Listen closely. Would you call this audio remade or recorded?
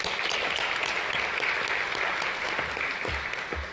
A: recorded